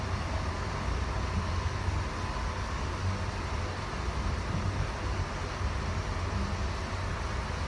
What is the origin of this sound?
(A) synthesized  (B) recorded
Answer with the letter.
B